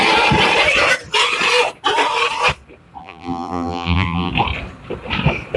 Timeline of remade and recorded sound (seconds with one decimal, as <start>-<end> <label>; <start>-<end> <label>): 0.0-3.0 recorded; 3.0-4.3 remade; 4.3-5.6 recorded